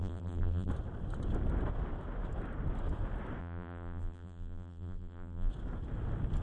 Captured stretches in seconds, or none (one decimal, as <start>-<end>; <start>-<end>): 0.7-3.4; 5.5-6.4